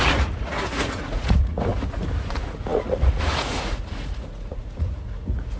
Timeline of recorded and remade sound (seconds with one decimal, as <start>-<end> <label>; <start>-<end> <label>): 0.0-1.7 remade; 1.7-2.3 recorded; 2.3-5.6 remade